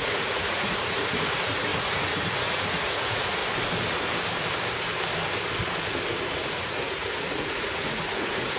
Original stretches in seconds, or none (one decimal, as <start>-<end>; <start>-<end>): 3.4-6.3